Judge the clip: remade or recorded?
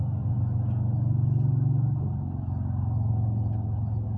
recorded